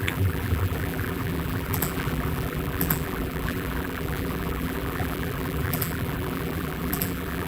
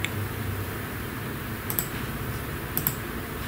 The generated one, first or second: first